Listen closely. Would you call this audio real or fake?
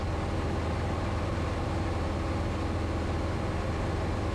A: real